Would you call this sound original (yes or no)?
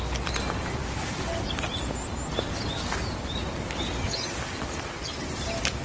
yes